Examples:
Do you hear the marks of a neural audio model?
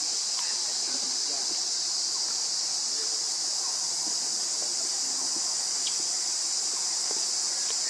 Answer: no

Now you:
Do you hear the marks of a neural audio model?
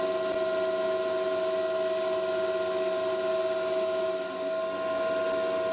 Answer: no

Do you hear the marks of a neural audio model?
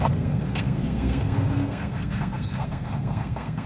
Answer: yes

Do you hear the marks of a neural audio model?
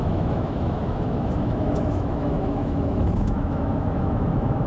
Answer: yes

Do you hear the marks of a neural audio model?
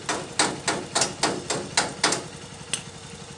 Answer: no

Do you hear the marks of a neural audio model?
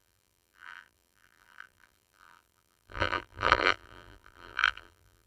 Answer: yes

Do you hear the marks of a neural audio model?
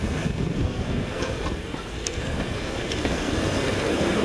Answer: yes